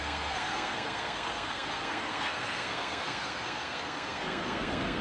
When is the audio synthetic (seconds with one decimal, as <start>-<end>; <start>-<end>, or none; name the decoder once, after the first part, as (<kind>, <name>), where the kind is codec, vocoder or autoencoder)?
0.0-5.0 (codec, SNAC)

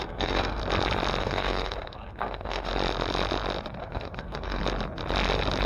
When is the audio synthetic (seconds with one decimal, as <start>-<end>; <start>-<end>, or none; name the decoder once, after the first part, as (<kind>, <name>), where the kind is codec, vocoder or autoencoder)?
0.0-0.6 (codec, SNAC); 1.2-2.7; 3.8-4.6

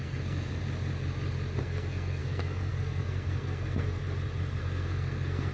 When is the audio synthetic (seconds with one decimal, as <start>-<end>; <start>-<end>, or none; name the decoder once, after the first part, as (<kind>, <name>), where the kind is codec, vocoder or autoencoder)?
0.0-0.6 (codec, SNAC); 1.6-4.0; 4.6-5.5

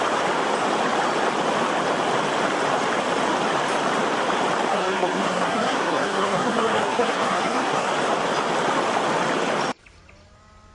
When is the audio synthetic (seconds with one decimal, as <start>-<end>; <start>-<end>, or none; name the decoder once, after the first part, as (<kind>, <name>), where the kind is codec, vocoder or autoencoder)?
4.7-7.9 (codec, SNAC)

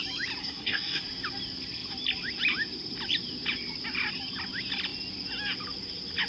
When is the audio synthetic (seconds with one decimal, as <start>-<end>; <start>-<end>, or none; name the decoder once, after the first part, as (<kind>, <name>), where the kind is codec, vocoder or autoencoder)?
0.4-1.0 (codec, SNAC)

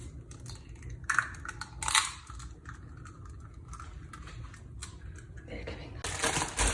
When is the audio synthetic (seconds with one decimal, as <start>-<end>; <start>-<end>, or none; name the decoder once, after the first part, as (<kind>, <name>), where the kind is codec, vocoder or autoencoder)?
none